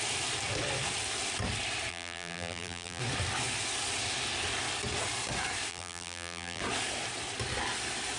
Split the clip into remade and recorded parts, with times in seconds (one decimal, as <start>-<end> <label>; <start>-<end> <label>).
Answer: 0.0-1.9 recorded; 1.9-3.0 remade; 3.0-5.7 recorded; 5.7-6.6 remade; 6.6-8.2 recorded